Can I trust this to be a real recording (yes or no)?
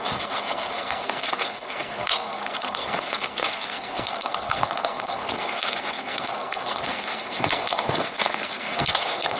no